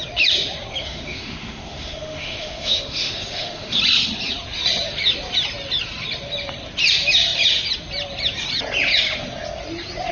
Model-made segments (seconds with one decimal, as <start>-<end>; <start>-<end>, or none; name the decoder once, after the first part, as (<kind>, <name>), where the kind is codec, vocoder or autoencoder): 0.8-3.8 (autoencoder, DAC-VAE)